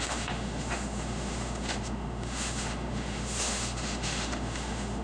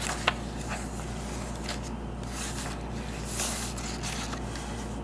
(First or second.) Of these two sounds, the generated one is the first